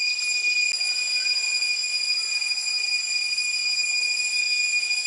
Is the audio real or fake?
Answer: real